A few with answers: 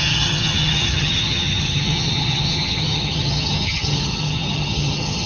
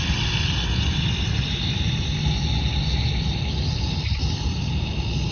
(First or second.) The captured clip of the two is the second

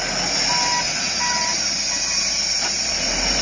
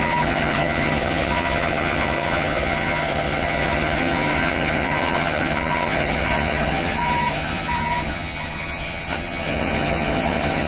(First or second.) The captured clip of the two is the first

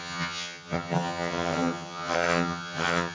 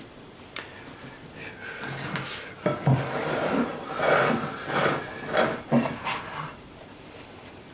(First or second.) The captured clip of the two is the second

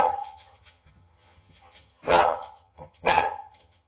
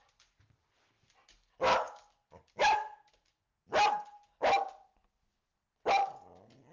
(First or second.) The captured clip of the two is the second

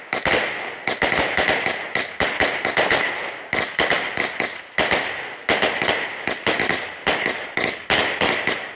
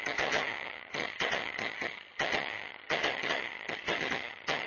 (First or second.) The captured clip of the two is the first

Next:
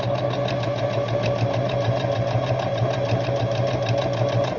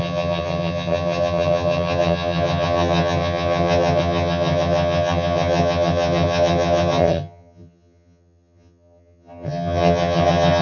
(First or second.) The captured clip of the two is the first